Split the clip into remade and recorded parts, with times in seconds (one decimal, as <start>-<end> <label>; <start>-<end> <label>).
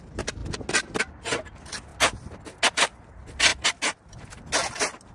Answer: 0.0-5.1 recorded